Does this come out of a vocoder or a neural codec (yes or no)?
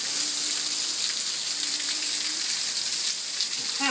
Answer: no